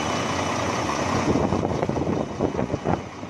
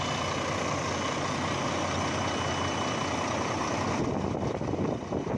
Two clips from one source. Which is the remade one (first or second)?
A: first